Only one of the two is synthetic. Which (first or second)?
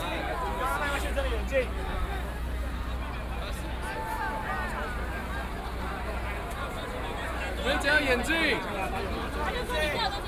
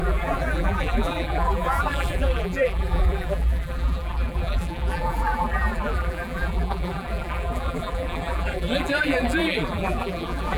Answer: second